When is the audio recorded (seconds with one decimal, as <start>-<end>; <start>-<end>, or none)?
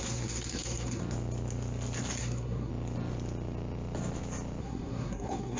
1.0-2.2; 2.7-4.6